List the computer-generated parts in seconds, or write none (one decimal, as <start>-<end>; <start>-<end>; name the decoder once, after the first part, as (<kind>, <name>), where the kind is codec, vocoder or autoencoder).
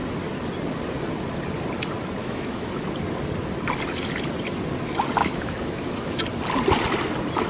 2.2-2.7 (autoencoder, DAC-VAE); 5.2-6.2